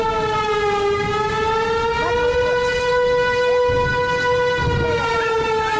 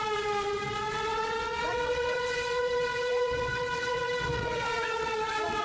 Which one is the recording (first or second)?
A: first